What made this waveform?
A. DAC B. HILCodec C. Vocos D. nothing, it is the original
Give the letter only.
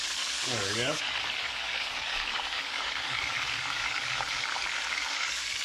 A